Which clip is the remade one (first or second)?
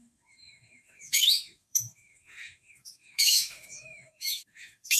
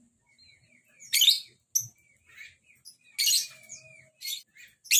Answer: first